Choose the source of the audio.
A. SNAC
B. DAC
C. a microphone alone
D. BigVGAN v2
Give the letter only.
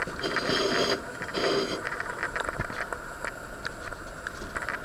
C